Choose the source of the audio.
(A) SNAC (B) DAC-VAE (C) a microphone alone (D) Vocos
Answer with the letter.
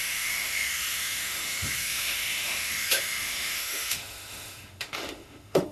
B